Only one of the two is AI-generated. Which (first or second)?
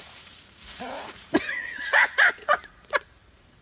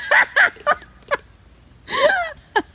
first